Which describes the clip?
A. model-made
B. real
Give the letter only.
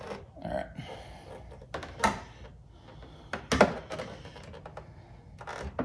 B